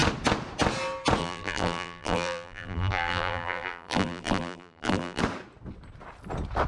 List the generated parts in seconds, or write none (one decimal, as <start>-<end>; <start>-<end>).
1.2-5.2